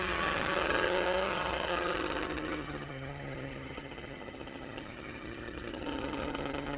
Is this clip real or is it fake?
fake